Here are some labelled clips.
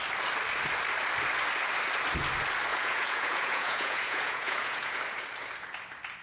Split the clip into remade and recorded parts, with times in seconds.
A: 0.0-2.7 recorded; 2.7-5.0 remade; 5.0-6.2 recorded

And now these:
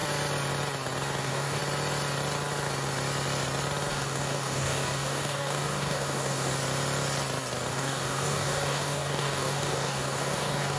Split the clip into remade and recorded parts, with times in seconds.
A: 0.0-1.2 recorded; 1.2-1.6 remade; 1.6-3.9 recorded; 3.9-6.5 remade; 6.5-7.7 recorded; 7.7-10.8 remade